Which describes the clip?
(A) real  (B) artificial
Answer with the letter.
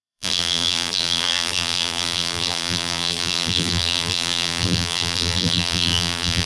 B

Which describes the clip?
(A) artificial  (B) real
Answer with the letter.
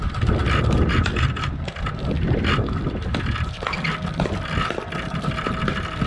B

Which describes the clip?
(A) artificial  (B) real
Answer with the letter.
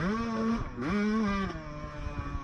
B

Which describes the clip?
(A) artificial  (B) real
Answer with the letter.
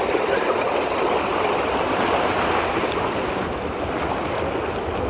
B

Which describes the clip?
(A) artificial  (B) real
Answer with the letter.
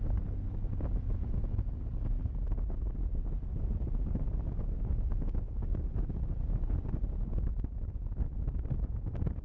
B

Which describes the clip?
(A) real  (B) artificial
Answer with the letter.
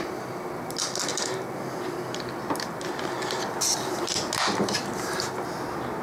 A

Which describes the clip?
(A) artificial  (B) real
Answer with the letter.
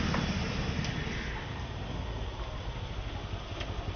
B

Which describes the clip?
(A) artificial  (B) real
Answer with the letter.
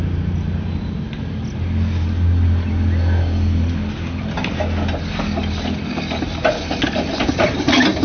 B